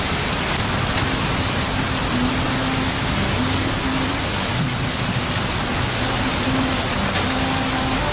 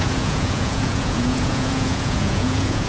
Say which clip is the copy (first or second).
second